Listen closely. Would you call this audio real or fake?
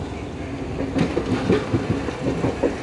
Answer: real